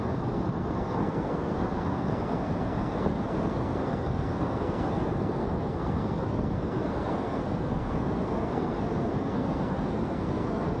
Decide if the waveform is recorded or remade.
remade